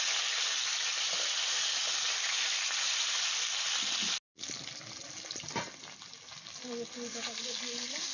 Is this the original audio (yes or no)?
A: yes